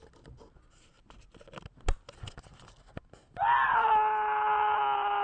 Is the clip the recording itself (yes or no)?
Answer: yes